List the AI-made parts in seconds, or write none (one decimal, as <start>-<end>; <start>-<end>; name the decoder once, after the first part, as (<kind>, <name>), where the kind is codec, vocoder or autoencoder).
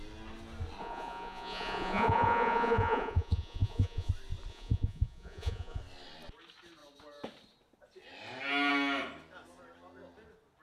0.8-4.1 (vocoder, Vocos); 4.5-5.8